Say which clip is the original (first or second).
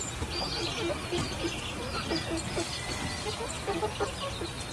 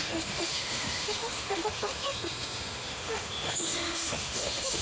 first